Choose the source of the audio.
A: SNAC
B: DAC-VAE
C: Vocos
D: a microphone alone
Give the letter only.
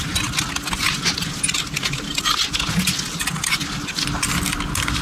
D